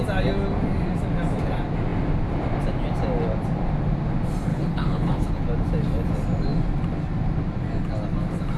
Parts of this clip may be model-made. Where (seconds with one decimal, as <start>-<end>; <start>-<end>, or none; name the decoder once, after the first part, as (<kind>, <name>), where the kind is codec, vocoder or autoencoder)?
4.5-5.4 (codec, HILCodec)

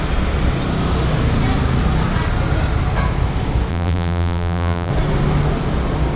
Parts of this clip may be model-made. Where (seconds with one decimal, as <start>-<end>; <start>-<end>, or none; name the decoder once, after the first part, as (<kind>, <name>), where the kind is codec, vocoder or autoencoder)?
3.7-4.9 (vocoder, BigVGAN v2)

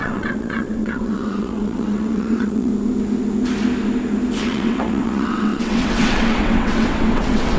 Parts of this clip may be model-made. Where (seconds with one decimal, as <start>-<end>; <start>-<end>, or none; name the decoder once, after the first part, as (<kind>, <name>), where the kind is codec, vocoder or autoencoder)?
0.0-2.7 (vocoder, WaveNeXt); 4.4-7.6

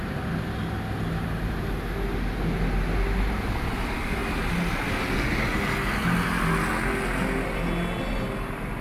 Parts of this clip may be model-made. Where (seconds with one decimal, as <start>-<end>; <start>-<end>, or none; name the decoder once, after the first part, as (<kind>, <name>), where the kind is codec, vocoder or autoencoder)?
none

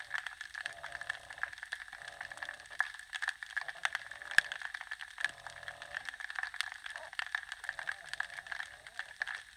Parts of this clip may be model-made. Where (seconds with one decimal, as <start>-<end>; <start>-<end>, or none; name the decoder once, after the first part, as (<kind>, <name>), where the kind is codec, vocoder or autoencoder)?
none